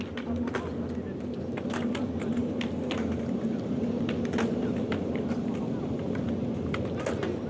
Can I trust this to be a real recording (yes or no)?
yes